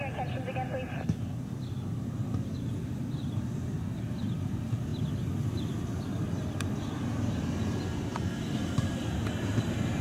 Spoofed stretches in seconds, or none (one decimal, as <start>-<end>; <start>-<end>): 8.1-8.9